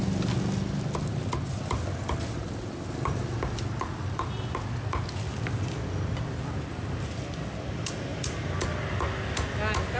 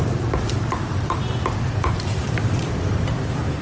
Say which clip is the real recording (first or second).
first